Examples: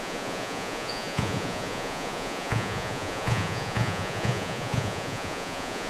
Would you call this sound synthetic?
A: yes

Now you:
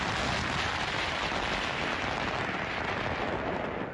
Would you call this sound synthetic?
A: no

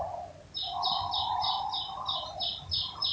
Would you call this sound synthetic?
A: no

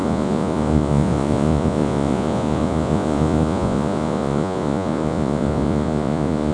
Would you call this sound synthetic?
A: yes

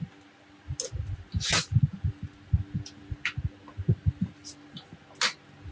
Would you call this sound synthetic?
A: no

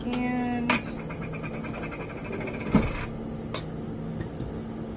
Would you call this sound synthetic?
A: no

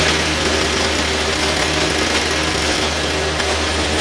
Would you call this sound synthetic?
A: no